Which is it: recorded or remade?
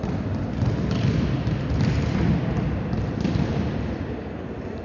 remade